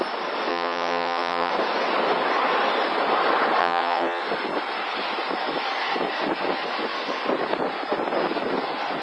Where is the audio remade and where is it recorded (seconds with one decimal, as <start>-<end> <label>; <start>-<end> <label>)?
0.0-0.5 recorded; 0.5-1.5 remade; 1.5-3.6 recorded; 3.6-4.2 remade; 4.2-9.0 recorded